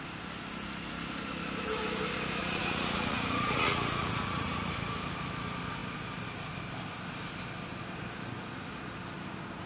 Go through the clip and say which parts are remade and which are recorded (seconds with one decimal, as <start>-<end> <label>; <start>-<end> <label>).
0.0-2.4 recorded; 2.4-4.7 remade; 4.7-9.7 recorded